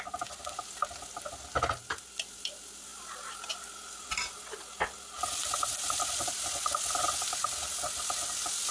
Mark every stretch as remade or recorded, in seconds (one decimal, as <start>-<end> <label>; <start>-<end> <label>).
0.0-8.7 recorded